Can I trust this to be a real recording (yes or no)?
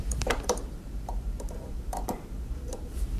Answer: no